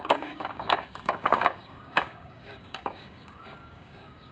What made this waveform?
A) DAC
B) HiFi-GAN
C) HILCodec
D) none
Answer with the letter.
A